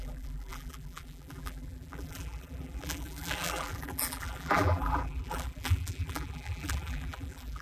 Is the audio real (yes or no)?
no